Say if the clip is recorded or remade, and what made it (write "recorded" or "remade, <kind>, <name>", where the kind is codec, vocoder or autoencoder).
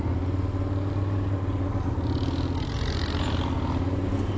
recorded